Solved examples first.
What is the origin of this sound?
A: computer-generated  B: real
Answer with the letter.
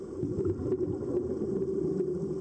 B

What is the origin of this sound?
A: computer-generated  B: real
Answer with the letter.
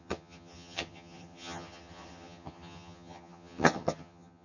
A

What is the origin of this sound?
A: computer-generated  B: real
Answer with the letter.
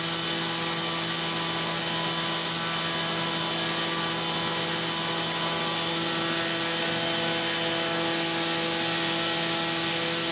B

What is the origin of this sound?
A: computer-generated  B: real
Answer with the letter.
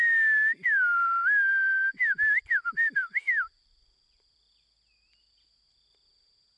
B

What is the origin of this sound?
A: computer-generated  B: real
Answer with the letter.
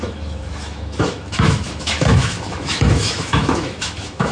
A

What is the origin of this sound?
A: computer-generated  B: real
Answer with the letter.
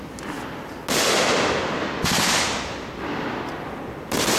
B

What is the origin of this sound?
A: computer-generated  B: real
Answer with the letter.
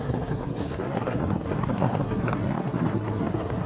A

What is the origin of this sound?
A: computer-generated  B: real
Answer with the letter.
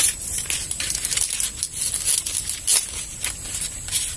B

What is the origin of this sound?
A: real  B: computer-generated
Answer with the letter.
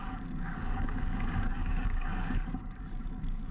B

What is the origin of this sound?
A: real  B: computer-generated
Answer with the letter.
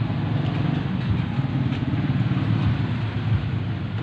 A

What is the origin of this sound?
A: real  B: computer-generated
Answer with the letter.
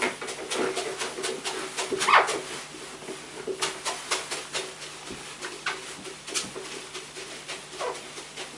A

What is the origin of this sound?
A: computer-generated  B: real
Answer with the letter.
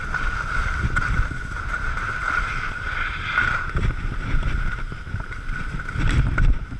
B